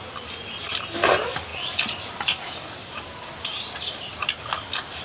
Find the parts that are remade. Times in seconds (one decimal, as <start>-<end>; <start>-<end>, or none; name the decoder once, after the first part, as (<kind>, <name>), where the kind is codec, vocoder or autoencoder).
none